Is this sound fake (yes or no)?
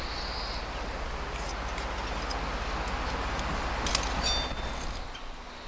no